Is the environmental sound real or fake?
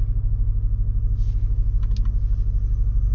real